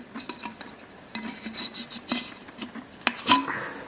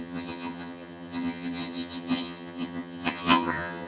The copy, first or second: second